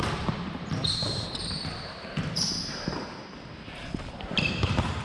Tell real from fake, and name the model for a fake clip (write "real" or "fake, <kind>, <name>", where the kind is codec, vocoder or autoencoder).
fake, vocoder, BigVGAN v2